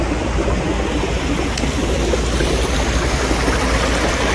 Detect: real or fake real